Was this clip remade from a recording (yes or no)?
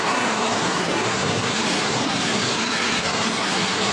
yes